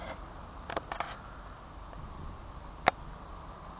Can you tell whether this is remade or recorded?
recorded